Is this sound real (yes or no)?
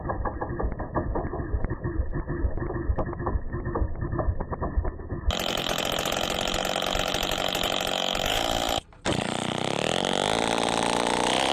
yes